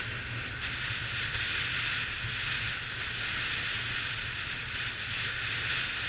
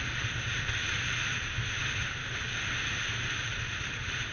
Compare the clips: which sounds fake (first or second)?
second